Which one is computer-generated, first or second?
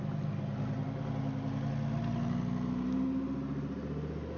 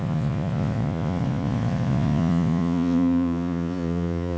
second